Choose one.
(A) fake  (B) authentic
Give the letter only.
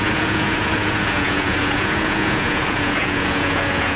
A